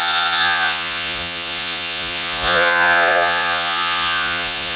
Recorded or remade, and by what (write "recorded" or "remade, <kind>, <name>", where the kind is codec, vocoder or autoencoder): remade, vocoder, Vocos